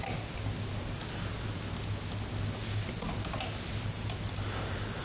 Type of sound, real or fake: real